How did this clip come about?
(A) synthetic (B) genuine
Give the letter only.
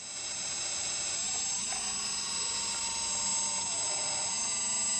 B